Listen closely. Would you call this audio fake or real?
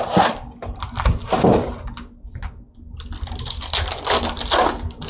real